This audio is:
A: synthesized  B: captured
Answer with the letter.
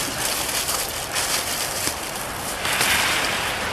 A